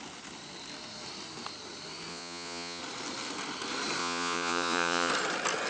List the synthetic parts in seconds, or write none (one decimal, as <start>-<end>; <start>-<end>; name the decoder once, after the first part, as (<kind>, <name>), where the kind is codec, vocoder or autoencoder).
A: 2.1-2.8 (vocoder, Vocos); 4.0-5.1